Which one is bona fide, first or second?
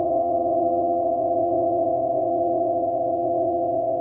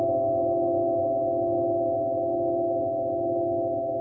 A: second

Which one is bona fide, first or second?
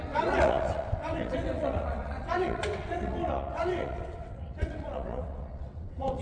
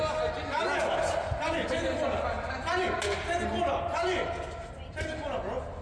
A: second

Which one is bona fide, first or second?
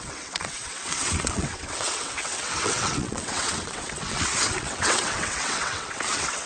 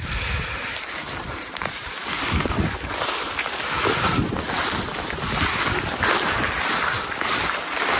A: second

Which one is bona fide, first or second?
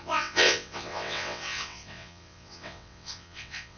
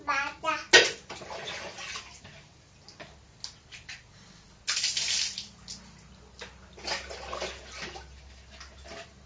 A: second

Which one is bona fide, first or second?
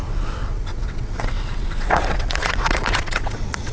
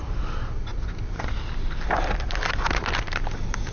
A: second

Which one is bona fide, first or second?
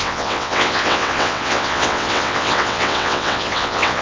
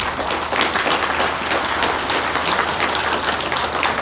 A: second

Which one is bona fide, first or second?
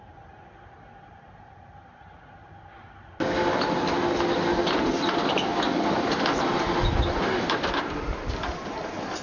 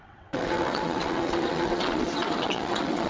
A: first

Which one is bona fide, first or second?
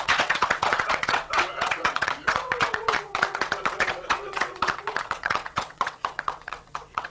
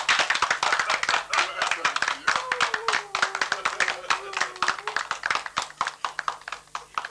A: second